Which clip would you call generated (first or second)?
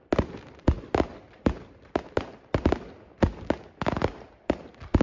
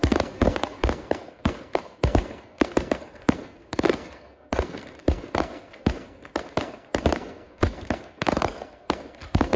second